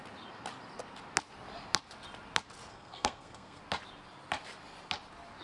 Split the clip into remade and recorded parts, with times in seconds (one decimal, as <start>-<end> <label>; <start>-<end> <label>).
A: 0.0-2.7 recorded; 2.7-3.6 remade; 3.6-5.4 recorded